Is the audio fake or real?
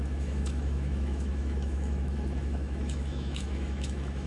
fake